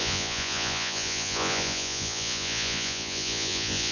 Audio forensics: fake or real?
fake